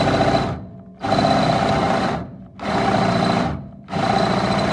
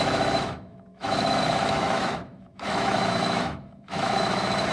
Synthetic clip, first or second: second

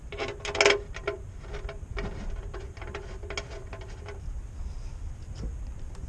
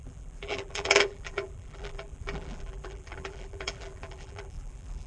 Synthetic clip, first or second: second